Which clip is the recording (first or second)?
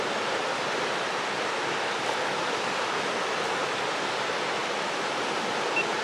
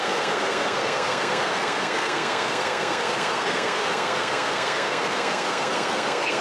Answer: first